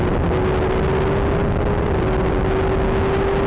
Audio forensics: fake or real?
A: real